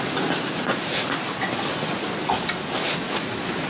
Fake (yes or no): no